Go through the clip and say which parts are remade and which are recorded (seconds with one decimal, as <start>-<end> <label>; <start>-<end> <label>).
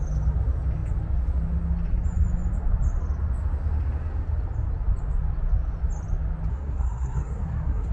0.0-6.5 recorded; 6.5-7.9 remade